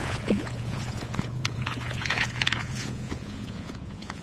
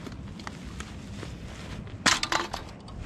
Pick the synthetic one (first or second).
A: first